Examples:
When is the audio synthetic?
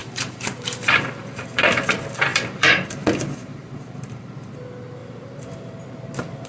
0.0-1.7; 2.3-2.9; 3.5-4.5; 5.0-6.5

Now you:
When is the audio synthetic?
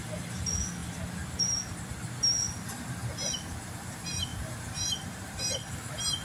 4.3-5.4